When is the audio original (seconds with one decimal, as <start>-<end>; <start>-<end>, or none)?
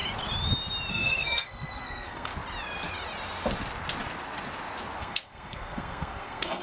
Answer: 0.0-0.9; 2.3-5.0